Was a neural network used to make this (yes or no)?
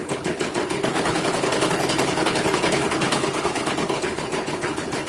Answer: yes